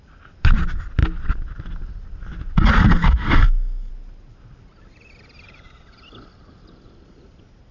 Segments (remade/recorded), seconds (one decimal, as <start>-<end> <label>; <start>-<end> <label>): 0.0-2.8 recorded; 2.8-3.9 remade; 3.9-7.7 recorded